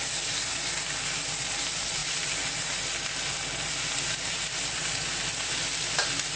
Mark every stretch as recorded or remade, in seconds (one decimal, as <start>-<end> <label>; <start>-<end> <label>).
0.0-6.4 recorded